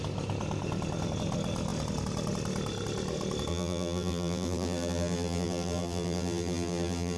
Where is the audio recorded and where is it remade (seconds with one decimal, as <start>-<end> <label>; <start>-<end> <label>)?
0.0-3.5 recorded; 3.5-7.2 remade